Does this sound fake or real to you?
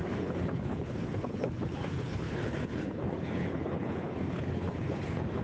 fake